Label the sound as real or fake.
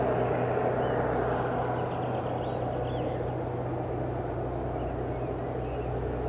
real